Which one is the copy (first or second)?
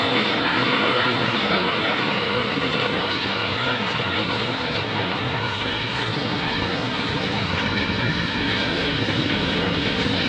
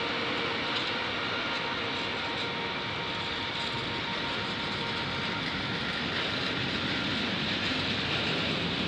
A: first